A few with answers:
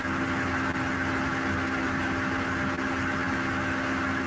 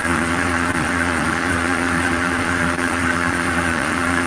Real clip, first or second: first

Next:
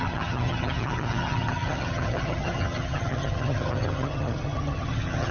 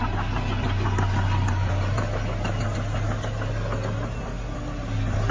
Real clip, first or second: second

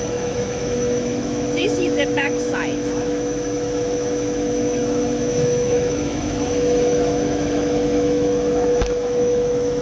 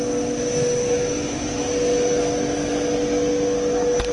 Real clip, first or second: second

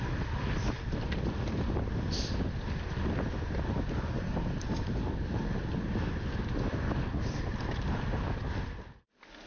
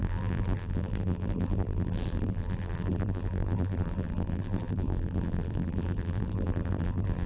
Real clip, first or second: first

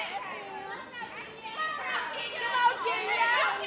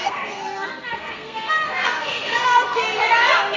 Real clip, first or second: first